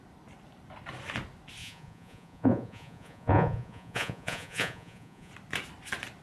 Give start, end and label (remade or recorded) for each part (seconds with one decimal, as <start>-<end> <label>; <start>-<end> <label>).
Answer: 0.0-1.6 recorded; 1.6-5.3 remade; 5.3-6.2 recorded